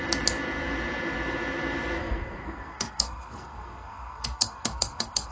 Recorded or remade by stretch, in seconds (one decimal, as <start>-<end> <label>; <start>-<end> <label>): 0.0-2.0 recorded; 2.0-5.3 remade